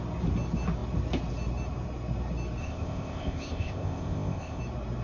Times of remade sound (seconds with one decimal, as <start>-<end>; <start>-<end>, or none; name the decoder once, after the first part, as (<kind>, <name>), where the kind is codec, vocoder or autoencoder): 2.6-4.6 (codec, ZipCodec)